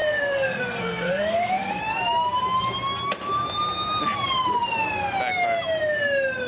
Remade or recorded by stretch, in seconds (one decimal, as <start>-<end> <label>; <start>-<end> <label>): 0.0-1.8 remade; 1.8-6.5 recorded